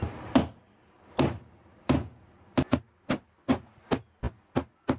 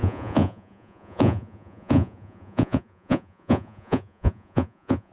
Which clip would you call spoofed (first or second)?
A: second